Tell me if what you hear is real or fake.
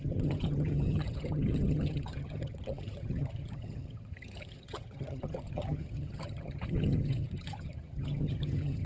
fake